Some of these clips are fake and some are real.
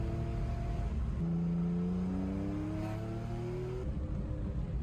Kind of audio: real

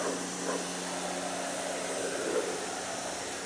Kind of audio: real